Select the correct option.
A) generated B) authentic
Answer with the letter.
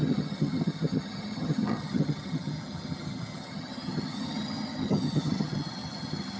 A